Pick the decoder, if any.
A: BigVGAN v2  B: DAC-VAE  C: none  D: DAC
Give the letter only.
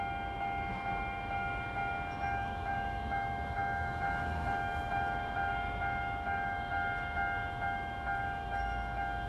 B